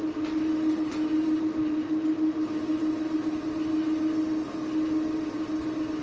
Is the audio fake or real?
real